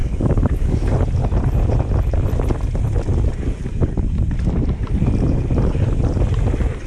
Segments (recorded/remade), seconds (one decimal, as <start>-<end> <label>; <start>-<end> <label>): 0.0-0.9 remade; 0.9-6.9 recorded